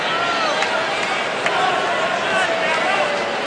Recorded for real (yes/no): yes